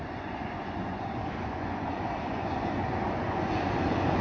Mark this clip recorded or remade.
remade